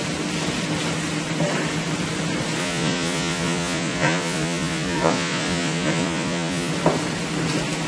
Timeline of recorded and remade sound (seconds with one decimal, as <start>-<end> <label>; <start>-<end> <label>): 0.0-2.6 recorded; 2.6-6.7 remade; 6.7-7.9 recorded